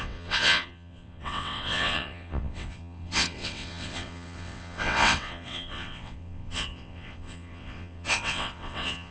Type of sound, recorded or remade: remade